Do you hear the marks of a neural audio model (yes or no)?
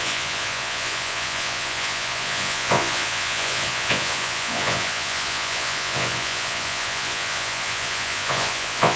yes